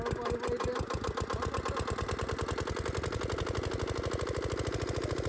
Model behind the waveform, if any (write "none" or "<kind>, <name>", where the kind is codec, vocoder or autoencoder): none